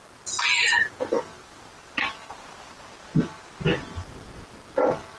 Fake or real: real